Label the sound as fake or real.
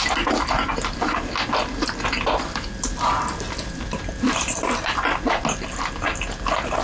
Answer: real